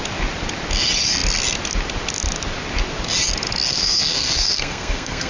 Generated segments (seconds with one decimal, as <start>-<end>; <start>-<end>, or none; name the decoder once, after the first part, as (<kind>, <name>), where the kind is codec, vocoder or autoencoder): 3.7-5.3 (codec, SNAC)